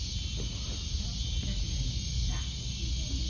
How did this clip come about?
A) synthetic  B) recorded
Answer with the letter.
B